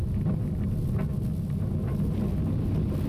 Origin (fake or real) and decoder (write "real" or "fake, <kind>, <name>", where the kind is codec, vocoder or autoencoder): real